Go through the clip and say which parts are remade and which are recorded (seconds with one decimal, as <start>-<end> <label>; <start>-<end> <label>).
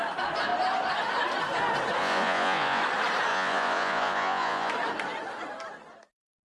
0.0-2.0 recorded; 2.0-2.8 remade; 2.8-3.3 recorded; 3.3-4.7 remade; 4.7-6.5 recorded